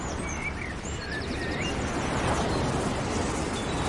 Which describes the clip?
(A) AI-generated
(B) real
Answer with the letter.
B